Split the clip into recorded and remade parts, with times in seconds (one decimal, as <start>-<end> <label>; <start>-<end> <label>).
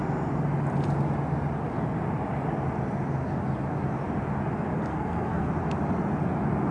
0.0-4.9 recorded; 4.9-5.5 remade; 5.5-6.7 recorded